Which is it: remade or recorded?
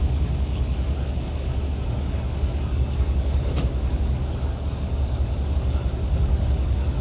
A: remade